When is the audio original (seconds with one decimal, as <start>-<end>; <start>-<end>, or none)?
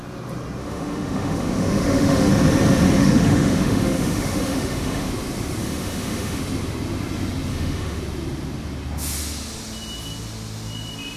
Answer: 0.0-0.6; 2.3-3.0; 5.1-5.6; 6.4-7.5; 8.0-11.2